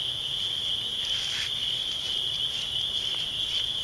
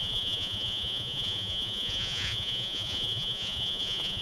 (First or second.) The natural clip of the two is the first